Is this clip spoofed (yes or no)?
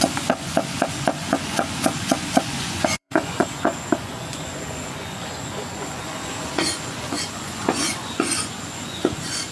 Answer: yes